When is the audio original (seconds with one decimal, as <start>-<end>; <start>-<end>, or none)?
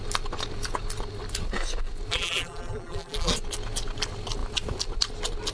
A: 0.0-2.1; 3.3-5.5